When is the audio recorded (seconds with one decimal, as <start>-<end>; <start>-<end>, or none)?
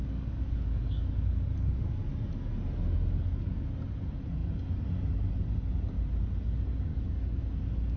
2.1-6.9; 7.4-8.0